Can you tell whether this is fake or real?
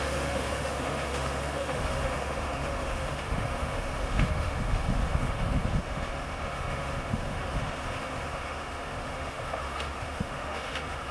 fake